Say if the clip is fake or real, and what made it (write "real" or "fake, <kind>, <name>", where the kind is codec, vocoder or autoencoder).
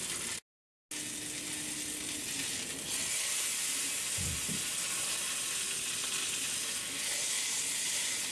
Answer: real